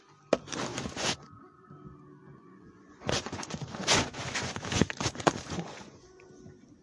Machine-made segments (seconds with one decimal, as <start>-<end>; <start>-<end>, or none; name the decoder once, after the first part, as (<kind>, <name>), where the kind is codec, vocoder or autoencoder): 0.7-1.7 (vocoder, Vocos); 2.2-6.3